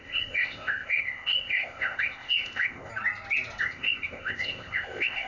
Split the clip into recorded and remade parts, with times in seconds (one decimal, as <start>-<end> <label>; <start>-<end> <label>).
0.0-2.9 remade; 2.9-3.6 recorded; 3.6-5.3 remade